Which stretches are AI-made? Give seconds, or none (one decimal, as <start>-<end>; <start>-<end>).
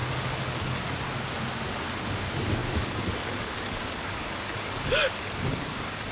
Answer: 0.0-0.8; 2.6-6.1